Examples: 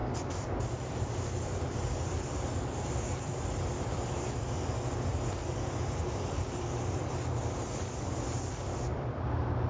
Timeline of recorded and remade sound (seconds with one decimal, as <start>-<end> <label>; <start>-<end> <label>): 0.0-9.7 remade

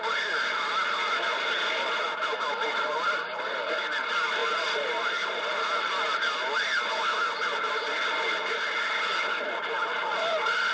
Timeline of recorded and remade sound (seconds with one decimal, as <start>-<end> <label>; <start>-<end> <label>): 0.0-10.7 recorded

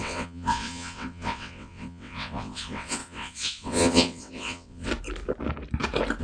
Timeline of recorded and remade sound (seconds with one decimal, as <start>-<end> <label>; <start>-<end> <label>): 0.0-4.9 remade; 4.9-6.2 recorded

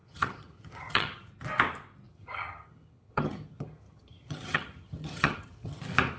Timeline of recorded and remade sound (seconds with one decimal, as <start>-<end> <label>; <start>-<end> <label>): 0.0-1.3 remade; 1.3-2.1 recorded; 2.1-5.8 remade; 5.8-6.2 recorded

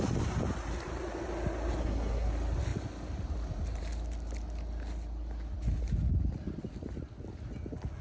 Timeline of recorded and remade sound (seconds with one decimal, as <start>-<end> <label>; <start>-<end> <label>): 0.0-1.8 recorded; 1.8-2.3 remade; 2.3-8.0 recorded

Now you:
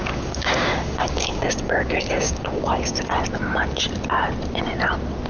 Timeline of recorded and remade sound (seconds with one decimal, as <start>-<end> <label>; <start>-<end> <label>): 0.0-3.1 remade; 3.1-5.3 recorded

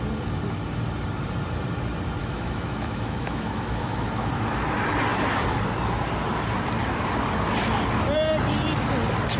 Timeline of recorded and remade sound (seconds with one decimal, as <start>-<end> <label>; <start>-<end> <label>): 0.0-2.2 recorded; 2.2-4.3 remade; 4.3-9.4 recorded

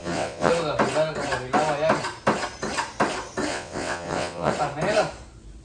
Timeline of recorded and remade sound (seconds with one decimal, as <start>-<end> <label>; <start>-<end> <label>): 0.0-0.5 remade; 0.5-3.5 recorded; 3.5-4.5 remade; 4.5-5.6 recorded